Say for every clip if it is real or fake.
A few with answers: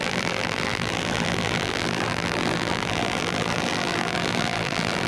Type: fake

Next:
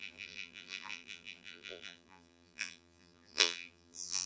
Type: fake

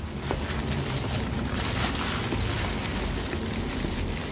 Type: fake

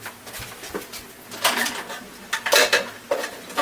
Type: real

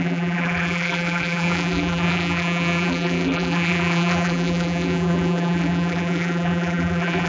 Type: fake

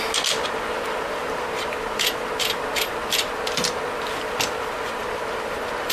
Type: real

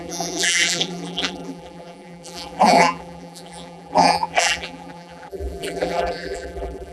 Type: fake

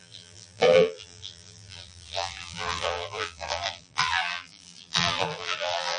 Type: fake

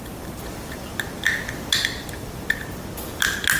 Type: real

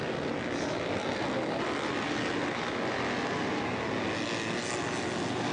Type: real